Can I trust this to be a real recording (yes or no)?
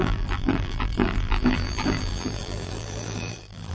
no